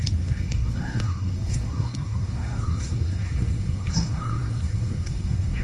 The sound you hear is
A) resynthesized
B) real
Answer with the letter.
A